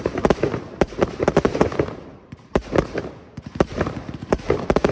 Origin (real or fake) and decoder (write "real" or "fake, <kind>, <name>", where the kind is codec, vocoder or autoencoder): fake, vocoder, BigVGAN v2